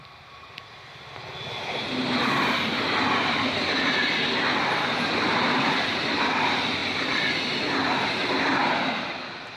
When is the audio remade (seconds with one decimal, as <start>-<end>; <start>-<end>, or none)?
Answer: none